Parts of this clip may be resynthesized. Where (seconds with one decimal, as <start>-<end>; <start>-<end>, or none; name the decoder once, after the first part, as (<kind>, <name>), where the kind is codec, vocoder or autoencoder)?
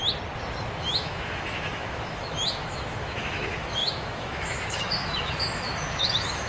0.8-6.5 (autoencoder, DAC-VAE)